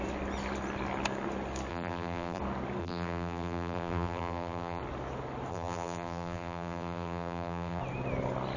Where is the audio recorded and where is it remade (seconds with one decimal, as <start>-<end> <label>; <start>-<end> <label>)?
0.0-1.7 recorded; 1.7-2.4 remade; 2.4-2.8 recorded; 2.8-4.8 remade; 4.8-5.5 recorded; 5.5-7.8 remade; 7.8-8.6 recorded